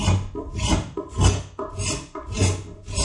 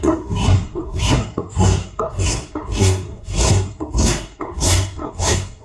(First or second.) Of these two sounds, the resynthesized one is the second